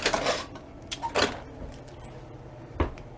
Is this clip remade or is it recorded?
remade